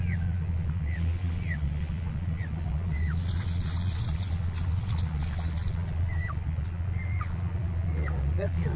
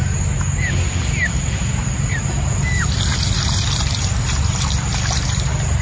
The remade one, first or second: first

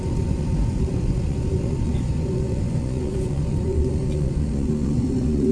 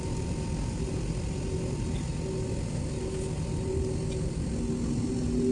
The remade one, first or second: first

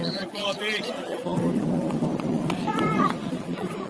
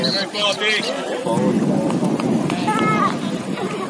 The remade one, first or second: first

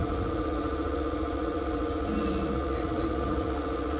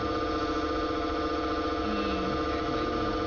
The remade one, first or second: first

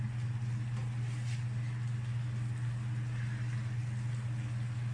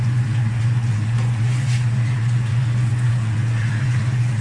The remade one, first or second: second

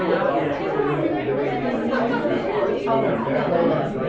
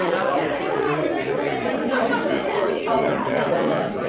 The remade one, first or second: second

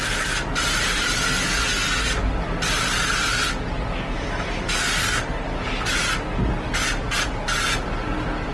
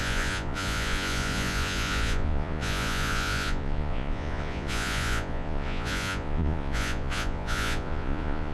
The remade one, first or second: second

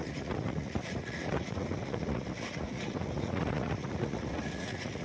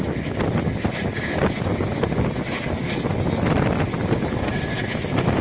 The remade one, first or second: first